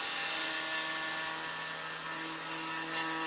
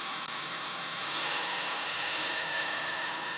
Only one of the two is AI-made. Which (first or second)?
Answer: second